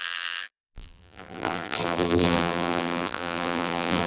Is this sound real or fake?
fake